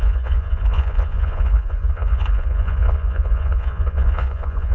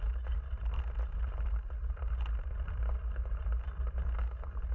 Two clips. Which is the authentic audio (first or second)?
second